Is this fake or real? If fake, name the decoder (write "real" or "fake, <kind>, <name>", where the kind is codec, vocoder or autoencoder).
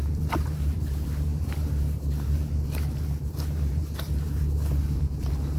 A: fake, vocoder, BigVGAN v2